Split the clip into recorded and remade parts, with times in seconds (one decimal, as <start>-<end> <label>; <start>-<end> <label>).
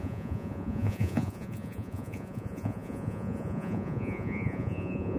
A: 0.0-5.2 remade